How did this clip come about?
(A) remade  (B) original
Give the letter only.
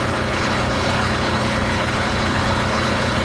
A